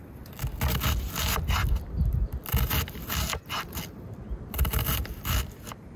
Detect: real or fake real